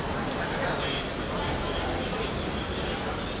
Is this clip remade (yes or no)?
no